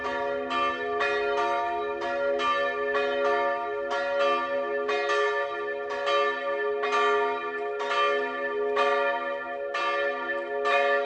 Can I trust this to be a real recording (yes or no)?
yes